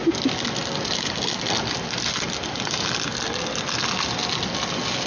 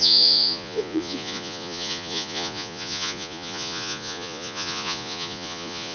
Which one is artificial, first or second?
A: second